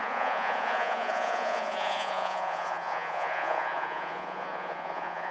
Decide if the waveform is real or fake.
fake